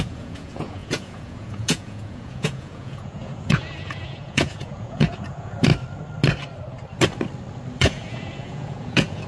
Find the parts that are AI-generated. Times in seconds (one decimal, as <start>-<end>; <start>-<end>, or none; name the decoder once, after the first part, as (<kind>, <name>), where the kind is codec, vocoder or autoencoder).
0.0-5.7 (vocoder, Vocos); 7.8-9.3